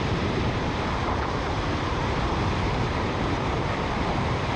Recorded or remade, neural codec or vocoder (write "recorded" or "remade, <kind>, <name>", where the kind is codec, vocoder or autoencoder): remade, vocoder, BigVGAN v2